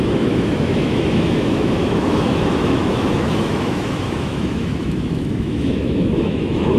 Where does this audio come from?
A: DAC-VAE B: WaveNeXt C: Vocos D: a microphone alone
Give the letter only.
A